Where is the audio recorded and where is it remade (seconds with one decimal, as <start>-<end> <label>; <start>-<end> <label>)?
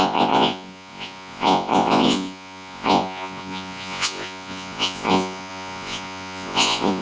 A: 0.0-7.0 remade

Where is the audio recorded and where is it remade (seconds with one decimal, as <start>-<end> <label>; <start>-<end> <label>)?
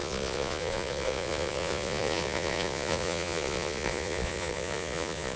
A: 0.0-5.4 remade